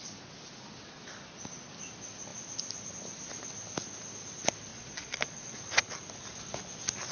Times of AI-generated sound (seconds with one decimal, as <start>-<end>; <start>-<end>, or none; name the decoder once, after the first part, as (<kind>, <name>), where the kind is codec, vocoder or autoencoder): 4.7-5.6 (vocoder, Vocos)

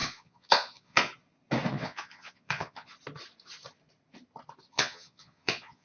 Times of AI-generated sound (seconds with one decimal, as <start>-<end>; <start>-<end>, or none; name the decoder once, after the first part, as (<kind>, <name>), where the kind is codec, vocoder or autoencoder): 0.0-1.1 (vocoder, Vocos); 1.7-2.9; 4.7-5.8

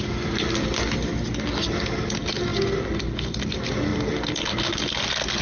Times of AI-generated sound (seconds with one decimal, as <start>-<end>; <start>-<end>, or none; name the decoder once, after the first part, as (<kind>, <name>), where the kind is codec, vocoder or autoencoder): none